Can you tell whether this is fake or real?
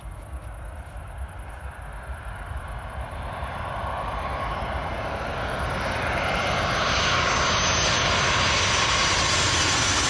fake